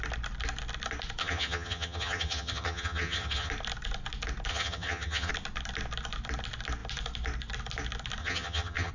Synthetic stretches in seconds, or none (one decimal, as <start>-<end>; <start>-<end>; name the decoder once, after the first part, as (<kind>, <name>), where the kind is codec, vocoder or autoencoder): 1.2-3.5 (vocoder, HiFi-GAN); 4.5-5.3; 8.2-8.9